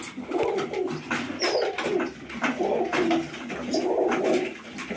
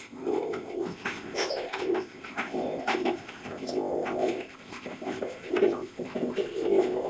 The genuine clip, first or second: first